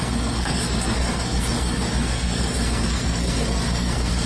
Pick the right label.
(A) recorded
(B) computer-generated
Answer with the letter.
B